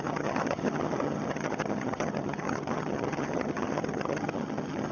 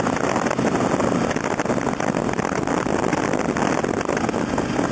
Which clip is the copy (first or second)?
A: first